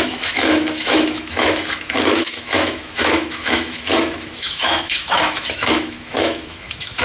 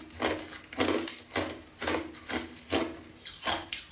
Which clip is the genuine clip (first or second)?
second